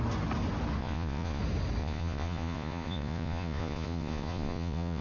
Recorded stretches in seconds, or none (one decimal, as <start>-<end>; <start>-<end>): 0.0-0.8; 1.4-1.8